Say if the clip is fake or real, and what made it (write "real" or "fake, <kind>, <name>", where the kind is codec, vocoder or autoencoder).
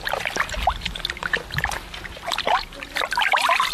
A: real